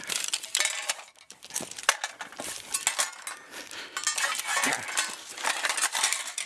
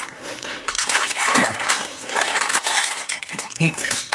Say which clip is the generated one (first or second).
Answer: second